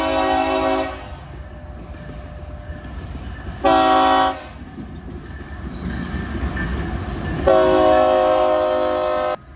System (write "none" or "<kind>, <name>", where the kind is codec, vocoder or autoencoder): none